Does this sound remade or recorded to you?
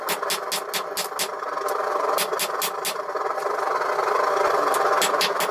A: recorded